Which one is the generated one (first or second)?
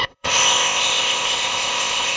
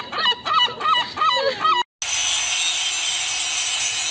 first